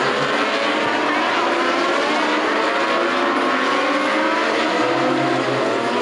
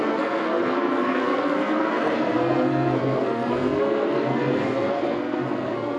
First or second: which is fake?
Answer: second